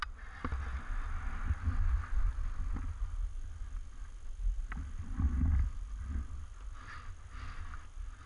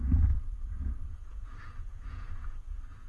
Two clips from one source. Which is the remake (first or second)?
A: second